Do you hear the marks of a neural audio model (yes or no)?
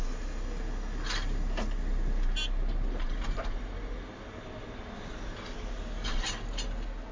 no